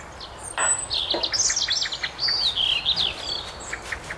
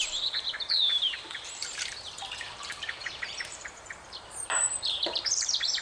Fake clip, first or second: second